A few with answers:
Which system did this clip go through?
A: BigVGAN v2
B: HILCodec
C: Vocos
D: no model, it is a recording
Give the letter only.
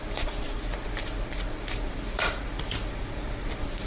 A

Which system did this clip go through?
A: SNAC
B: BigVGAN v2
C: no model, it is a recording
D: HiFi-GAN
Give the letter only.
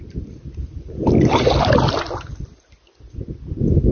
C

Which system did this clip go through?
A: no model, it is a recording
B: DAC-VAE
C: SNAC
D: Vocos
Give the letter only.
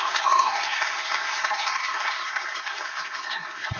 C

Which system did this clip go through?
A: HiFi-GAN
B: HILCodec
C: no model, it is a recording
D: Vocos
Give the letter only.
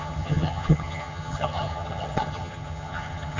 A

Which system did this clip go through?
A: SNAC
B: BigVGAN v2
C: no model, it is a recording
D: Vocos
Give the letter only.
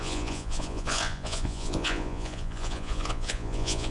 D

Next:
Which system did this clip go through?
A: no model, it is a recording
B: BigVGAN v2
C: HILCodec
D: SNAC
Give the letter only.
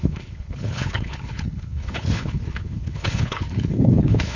C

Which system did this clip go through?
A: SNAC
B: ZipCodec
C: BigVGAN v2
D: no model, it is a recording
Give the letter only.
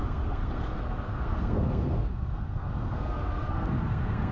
A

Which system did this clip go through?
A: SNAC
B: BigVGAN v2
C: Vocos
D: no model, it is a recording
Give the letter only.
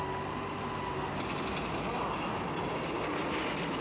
D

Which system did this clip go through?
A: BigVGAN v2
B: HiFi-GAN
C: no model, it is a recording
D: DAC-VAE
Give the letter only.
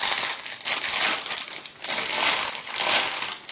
C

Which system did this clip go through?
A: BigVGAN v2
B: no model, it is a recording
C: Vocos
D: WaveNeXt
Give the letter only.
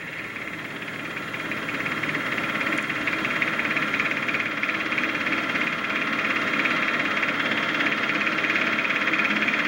B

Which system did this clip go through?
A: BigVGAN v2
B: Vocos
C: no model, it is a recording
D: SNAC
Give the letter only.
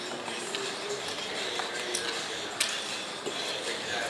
C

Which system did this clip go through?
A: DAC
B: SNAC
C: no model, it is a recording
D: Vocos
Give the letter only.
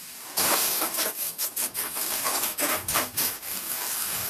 A